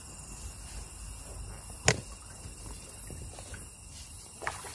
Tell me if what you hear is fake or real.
real